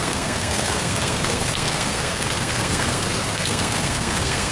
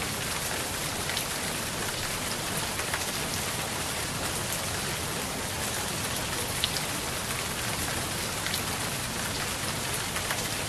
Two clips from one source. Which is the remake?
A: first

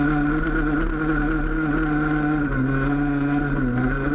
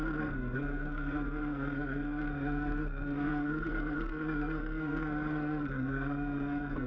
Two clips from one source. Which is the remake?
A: second